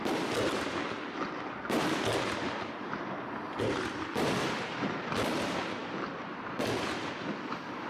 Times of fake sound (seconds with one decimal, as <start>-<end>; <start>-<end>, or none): none